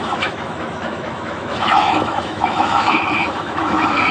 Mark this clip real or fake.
fake